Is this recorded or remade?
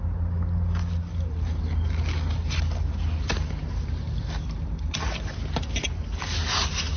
recorded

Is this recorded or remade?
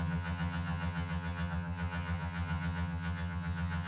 remade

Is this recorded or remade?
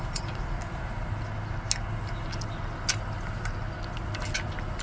recorded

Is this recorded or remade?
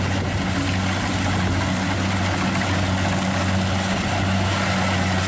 recorded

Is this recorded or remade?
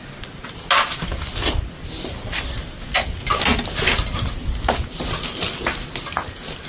recorded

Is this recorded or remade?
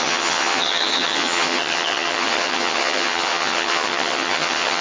remade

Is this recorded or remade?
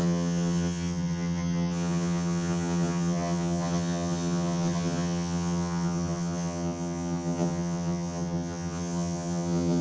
remade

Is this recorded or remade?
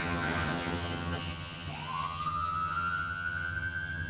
remade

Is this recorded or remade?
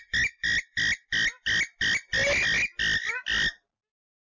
recorded